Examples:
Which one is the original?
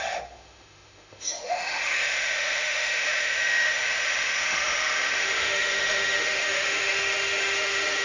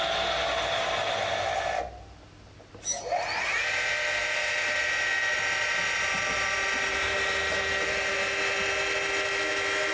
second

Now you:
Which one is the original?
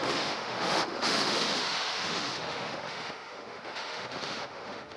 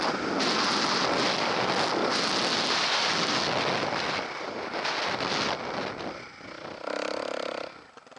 second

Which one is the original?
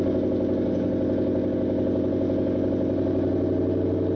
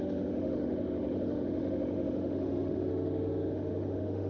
first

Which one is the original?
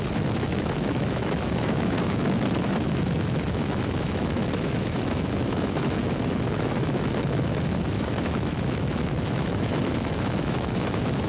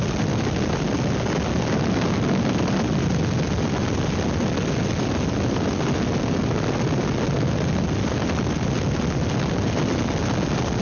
second